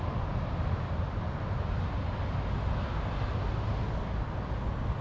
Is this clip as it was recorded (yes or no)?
yes